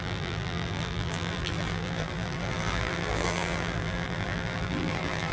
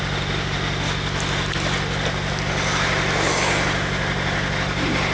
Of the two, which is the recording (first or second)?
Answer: second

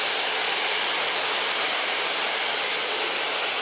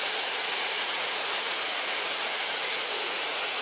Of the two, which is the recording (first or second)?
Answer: first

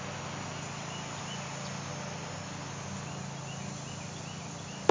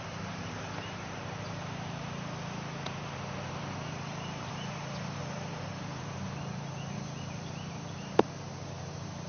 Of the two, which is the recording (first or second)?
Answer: first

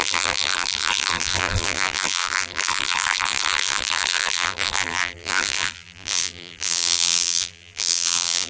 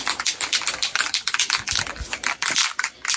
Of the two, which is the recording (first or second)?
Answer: second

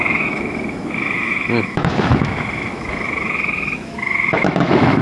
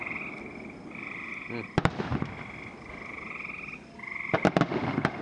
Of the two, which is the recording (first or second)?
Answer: second